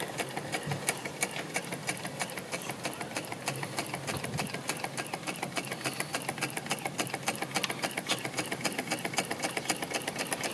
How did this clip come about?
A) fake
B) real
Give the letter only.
B